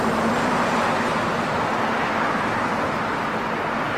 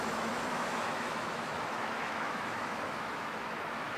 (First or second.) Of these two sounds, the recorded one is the first